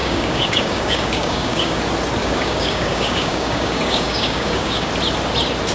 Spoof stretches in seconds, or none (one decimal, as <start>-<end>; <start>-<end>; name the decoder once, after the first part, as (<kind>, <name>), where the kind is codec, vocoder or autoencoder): 0.0-1.8 (codec, DAC); 2.2-4.9